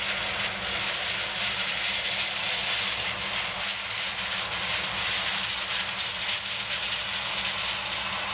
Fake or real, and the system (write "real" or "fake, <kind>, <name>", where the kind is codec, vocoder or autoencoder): real